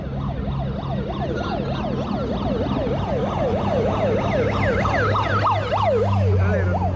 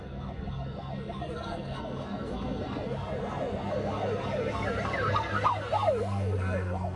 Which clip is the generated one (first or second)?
second